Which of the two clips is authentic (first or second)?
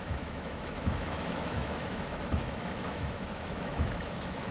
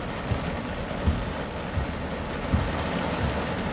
second